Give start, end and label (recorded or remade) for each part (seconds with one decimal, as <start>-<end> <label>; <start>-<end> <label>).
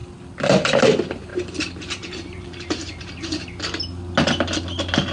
0.0-1.3 recorded; 1.3-3.6 remade; 3.6-5.1 recorded